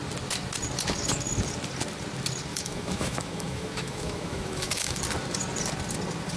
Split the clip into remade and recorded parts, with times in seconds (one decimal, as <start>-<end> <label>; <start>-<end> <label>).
0.0-2.5 recorded; 2.5-5.0 remade; 5.0-6.4 recorded